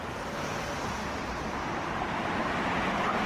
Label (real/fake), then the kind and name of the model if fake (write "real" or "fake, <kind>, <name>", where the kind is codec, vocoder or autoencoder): fake, vocoder, BigVGAN v2